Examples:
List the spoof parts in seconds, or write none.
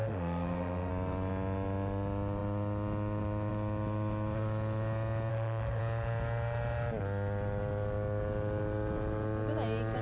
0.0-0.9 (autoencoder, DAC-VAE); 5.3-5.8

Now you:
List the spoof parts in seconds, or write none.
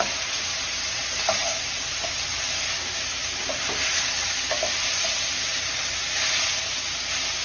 none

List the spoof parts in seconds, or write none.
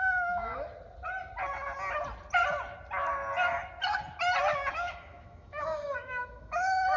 0.0-0.5 (autoencoder, DAC-VAE); 4.7-7.0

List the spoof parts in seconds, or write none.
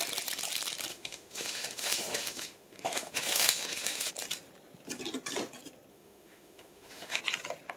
0.9-4.1 (autoencoder, DAC-VAE); 5.9-7.2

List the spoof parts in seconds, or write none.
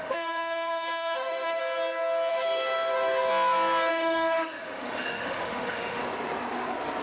0.0-1.6 (autoencoder, DAC-VAE); 2.3-3.3; 3.9-6.0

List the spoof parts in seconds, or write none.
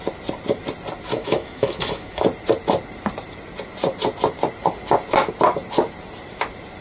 1.1-2.2 (autoencoder, DAC-VAE)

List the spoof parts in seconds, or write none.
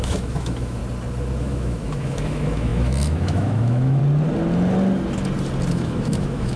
0.0-0.8 (autoencoder, DAC-VAE); 1.4-4.0; 5.7-6.6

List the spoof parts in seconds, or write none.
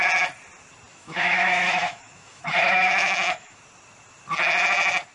0.9-3.6 (autoencoder, DAC-VAE)